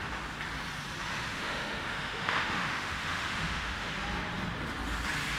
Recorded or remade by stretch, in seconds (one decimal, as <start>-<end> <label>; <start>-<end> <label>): 0.0-1.1 recorded; 1.1-3.9 remade; 3.9-5.4 recorded